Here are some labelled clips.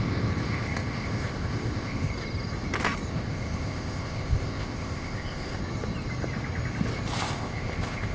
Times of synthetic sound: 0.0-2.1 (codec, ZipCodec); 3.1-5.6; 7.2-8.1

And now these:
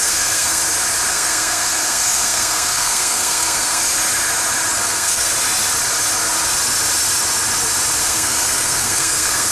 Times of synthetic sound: 0.0-0.6 (codec, SNAC); 1.1-3.8; 4.8-5.3; 8.0-9.5